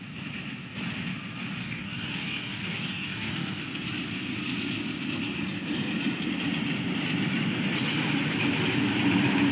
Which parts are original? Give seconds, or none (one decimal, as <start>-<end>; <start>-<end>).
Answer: 0.0-1.6; 3.6-9.5